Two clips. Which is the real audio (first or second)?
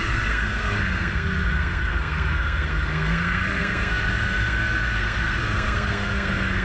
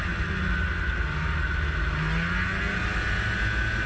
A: second